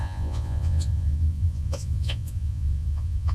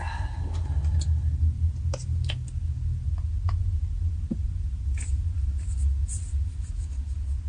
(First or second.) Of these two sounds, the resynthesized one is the first